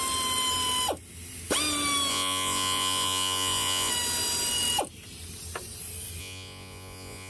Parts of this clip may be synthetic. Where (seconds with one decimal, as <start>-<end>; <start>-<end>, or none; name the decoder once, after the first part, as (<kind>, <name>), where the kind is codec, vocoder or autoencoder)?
2.1-3.9 (vocoder, Vocos); 6.2-7.3